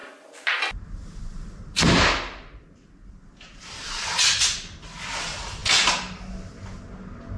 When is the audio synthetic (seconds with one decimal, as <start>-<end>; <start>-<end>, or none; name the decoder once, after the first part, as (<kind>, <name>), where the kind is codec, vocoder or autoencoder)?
none